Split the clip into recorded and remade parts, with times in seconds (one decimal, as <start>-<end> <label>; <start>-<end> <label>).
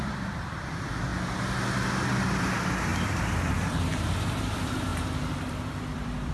0.0-1.1 remade; 1.1-2.2 recorded; 2.2-6.3 remade